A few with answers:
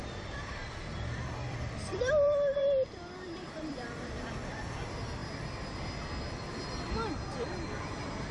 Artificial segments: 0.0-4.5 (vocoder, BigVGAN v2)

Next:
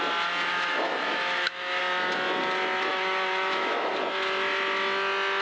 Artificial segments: 0.5-1.8 (autoencoder, DAC-VAE); 2.9-3.9

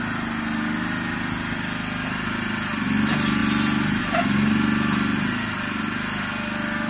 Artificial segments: none

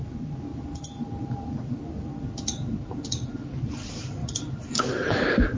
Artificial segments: 0.0-0.5 (vocoder, BigVGAN v2); 1.0-2.1; 3.6-4.2